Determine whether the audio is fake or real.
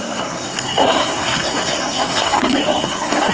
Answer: fake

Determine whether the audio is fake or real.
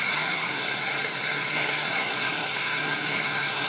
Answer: fake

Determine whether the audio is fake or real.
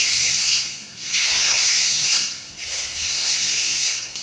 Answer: fake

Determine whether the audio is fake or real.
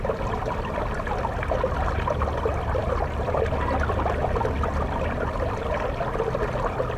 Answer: real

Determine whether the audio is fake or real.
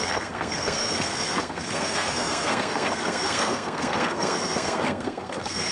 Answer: fake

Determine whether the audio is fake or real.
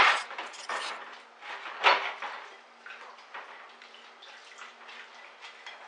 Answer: real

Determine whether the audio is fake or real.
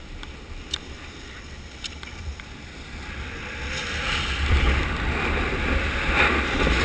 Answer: real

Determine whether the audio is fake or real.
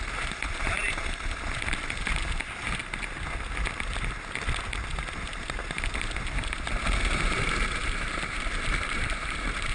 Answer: real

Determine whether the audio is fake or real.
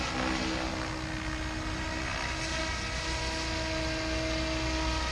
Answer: real